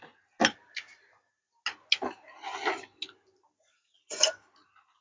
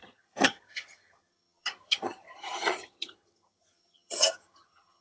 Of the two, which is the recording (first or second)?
first